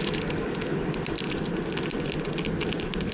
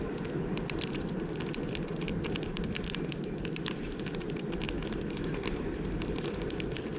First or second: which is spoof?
second